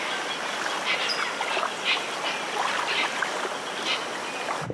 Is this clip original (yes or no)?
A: yes